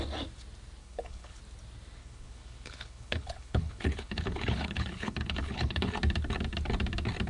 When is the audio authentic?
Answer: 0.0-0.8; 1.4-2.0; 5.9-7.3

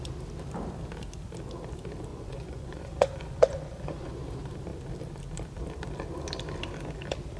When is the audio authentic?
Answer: 0.0-2.1; 4.1-7.4

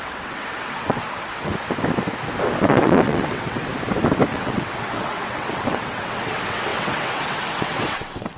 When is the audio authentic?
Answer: 1.5-2.6; 3.7-4.3

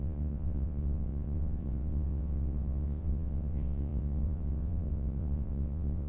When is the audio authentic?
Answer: none

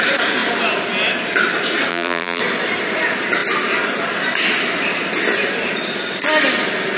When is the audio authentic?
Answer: 0.0-1.9; 2.4-7.0

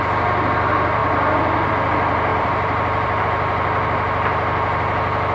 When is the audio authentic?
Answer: 0.0-2.3; 3.2-5.3

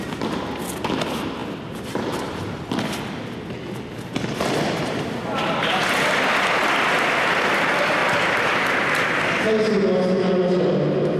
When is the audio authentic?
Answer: 0.0-11.2

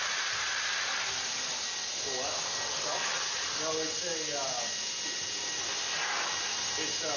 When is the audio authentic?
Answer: 0.0-7.2